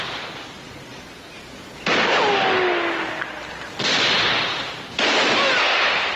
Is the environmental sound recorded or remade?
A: recorded